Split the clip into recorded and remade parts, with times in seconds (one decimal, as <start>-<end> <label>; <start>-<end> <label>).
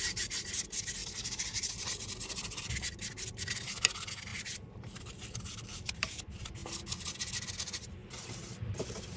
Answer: 0.0-1.0 recorded; 1.0-2.7 remade; 2.7-4.3 recorded; 4.3-5.2 remade; 5.2-9.2 recorded